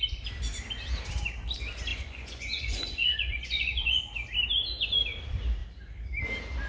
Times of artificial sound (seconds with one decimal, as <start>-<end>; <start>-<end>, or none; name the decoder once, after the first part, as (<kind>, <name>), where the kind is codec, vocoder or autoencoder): 1.9-4.0 (vocoder, Vocos)